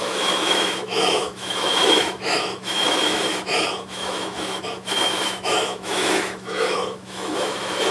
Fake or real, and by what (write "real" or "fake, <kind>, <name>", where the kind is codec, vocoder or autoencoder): fake, autoencoder, DAC-VAE